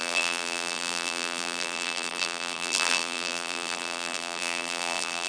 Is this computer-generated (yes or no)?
yes